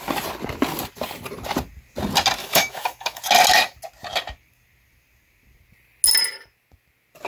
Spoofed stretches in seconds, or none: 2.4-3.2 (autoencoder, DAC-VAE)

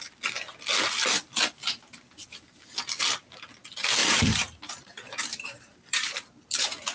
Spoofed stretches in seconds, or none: 4.0-6.1 (vocoder, BigVGAN v2)

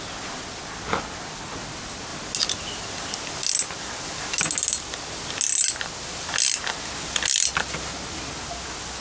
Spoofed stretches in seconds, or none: none

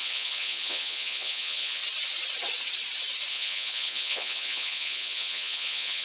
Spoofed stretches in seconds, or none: 0.0-1.8 (vocoder, Vocos); 3.3-6.0

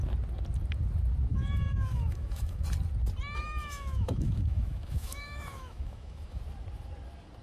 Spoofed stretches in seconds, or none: 1.3-2.6 (autoencoder, DAC-VAE); 3.6-6.4